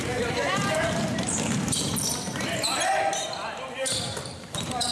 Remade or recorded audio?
remade